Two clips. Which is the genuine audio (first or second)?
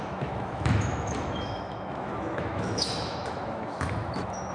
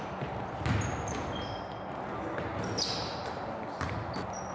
second